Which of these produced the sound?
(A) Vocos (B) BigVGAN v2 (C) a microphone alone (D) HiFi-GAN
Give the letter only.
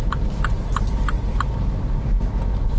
C